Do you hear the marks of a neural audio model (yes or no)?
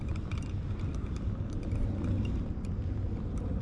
no